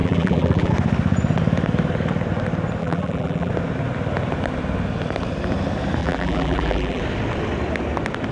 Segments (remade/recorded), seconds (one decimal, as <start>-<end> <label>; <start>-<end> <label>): 0.0-0.7 remade; 0.7-2.8 recorded; 2.8-3.5 remade; 3.5-6.0 recorded; 6.0-7.0 remade; 7.0-8.3 recorded